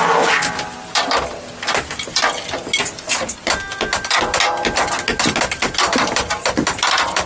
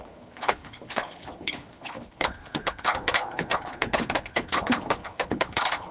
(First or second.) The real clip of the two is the first